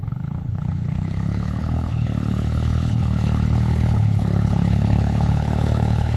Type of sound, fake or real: fake